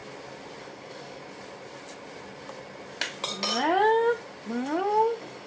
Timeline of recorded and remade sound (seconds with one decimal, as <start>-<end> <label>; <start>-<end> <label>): 0.0-0.6 recorded; 0.6-1.2 remade; 1.2-4.5 recorded; 4.5-5.5 remade